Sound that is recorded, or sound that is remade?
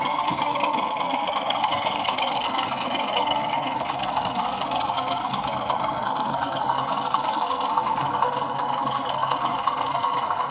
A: remade